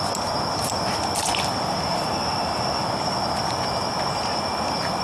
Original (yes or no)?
yes